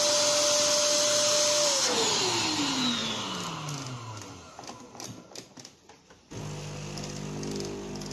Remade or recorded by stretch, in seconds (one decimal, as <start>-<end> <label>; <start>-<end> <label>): 0.0-8.1 recorded